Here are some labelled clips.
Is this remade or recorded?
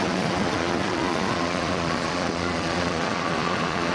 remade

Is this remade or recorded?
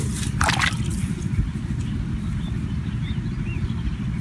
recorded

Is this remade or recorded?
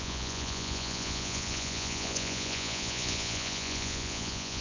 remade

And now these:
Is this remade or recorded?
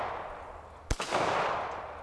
recorded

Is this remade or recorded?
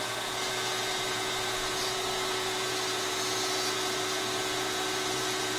remade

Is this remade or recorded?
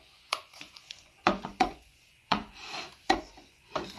remade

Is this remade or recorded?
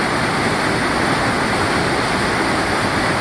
recorded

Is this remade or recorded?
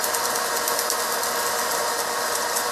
recorded